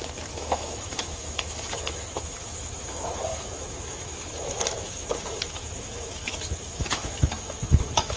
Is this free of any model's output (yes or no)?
no